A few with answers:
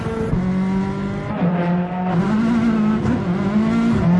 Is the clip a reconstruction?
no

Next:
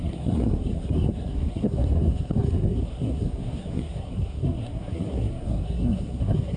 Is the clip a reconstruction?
yes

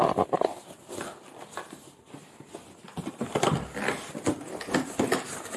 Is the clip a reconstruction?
no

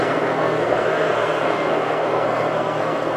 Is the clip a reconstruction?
yes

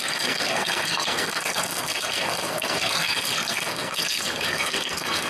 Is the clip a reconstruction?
yes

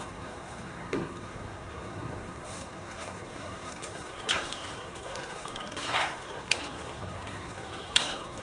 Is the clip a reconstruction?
yes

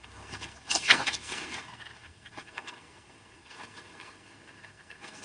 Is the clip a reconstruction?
yes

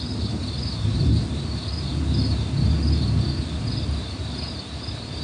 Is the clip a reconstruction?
no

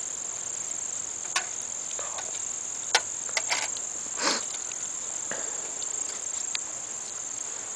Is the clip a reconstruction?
no